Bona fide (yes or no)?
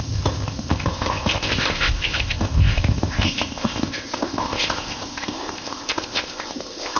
no